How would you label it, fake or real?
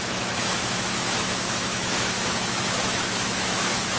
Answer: fake